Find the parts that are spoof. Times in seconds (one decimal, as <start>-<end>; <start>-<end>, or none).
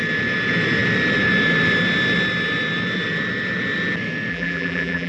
4.3-5.1